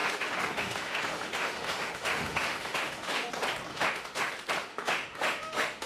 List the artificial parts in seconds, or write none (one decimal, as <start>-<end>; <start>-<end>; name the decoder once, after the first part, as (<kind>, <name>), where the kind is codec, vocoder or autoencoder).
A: 0.0-3.3 (autoencoder, DAC-VAE); 3.7-4.3; 4.7-5.9